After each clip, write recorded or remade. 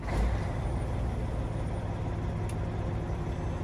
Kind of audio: recorded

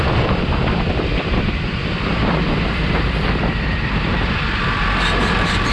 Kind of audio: remade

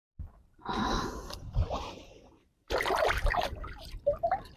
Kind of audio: remade